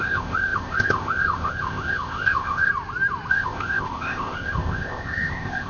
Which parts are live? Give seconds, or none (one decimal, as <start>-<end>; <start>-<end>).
2.7-3.3